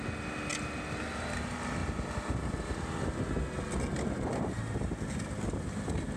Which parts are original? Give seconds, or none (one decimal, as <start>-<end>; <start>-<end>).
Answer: 0.0-6.2